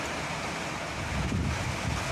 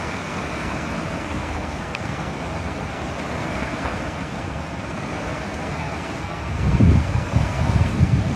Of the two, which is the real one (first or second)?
first